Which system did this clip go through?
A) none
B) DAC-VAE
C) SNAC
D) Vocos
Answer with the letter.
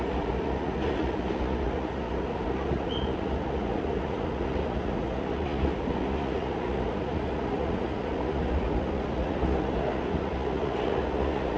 D